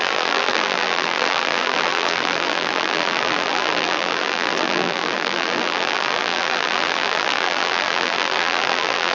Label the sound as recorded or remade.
remade